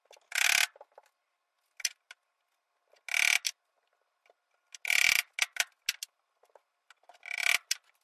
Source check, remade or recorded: recorded